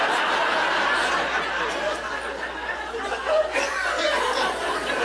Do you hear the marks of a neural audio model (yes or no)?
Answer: no